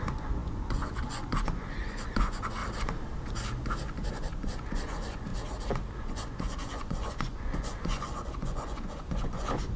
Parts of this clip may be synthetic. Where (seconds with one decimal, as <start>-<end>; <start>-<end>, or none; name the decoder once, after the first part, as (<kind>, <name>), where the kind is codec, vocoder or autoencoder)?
0.0-2.6 (vocoder, Vocos); 4.1-5.3; 6.0-9.8